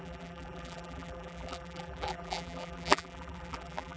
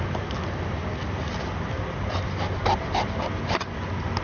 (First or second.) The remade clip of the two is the first